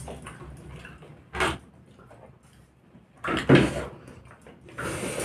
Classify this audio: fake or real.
real